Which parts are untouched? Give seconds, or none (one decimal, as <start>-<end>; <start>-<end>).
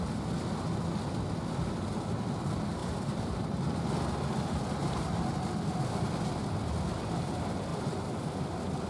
0.0-2.8; 3.6-4.8; 5.3-7.7; 8.4-8.9